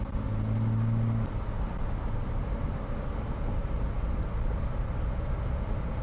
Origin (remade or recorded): recorded